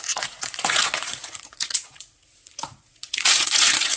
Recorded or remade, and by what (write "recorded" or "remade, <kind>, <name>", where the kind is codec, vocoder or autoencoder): remade, vocoder, Vocos